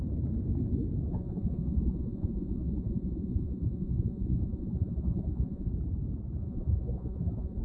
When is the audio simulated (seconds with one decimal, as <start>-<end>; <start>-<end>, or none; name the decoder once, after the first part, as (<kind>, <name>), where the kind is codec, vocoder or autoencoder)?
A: 1.1-5.7 (vocoder, Vocos); 6.4-7.6